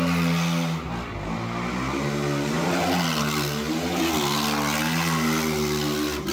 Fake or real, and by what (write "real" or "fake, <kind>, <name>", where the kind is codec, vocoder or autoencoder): real